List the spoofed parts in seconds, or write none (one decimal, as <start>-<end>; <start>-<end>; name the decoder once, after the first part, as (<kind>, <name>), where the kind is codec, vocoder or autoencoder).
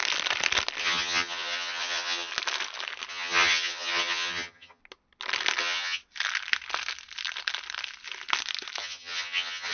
0.8-2.3 (vocoder, HiFi-GAN); 3.1-4.8; 5.6-6.0; 8.8-9.7